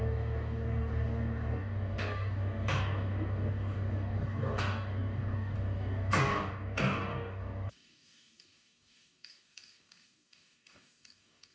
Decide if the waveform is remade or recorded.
remade